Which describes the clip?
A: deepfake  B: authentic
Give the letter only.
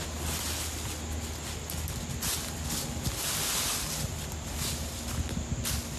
B